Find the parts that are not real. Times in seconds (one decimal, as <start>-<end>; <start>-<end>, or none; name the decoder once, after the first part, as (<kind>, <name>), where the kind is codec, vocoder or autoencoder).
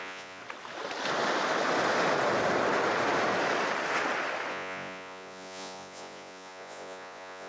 0.0-0.4 (vocoder, Vocos); 4.5-7.5